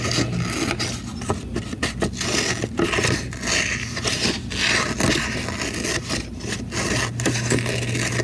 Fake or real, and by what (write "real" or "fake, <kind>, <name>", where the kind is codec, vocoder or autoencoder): real